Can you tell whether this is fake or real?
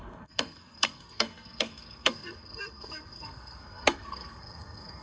fake